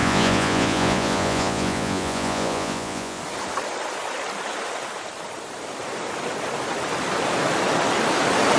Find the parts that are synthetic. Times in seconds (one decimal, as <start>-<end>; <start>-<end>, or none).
0.0-3.2